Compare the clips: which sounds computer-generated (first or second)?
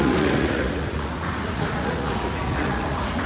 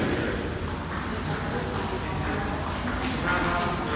first